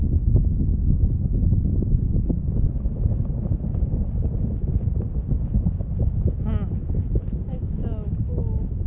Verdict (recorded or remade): recorded